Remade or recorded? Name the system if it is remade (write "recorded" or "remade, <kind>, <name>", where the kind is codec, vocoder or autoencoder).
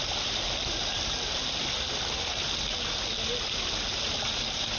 recorded